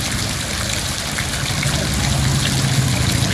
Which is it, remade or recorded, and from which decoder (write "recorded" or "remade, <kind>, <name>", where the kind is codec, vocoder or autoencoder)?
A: recorded